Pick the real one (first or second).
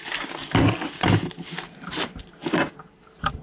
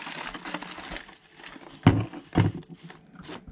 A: second